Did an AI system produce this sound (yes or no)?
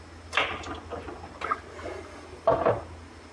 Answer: no